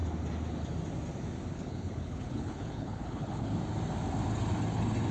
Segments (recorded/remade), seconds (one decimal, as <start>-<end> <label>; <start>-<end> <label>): 0.0-1.5 recorded; 1.5-3.5 remade; 3.5-5.1 recorded